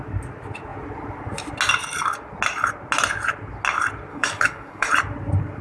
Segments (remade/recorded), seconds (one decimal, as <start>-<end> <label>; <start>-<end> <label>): 0.0-4.1 recorded; 4.1-4.9 remade; 4.9-5.6 recorded